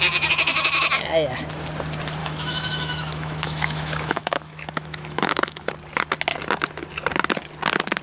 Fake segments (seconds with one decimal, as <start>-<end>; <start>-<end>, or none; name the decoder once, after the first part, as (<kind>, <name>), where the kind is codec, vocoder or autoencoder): 2.2-5.7 (autoencoder, DAC-VAE)